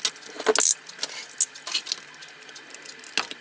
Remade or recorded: recorded